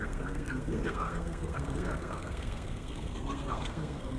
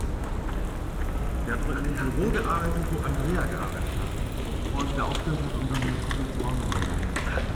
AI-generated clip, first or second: first